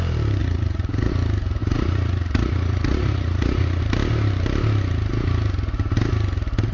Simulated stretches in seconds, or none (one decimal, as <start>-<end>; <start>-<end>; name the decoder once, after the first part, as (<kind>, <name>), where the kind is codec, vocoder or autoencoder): 0.4-1.1 (vocoder, Vocos); 1.6-3.8